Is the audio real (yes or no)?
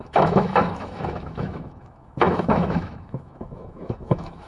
no